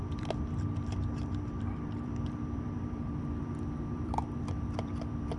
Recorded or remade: remade